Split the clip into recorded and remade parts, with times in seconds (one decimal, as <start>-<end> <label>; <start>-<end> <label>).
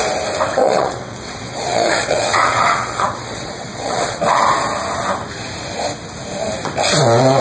0.0-0.5 recorded; 0.5-4.2 remade; 4.2-7.4 recorded